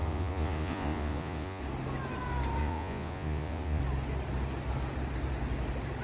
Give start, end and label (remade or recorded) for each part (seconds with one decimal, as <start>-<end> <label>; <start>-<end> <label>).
0.0-1.6 remade; 1.6-2.6 recorded; 2.6-3.8 remade; 3.8-6.0 recorded